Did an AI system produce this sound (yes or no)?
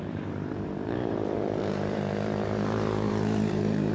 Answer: yes